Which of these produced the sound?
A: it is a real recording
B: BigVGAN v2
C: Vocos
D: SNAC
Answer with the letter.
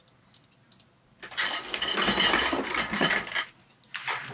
A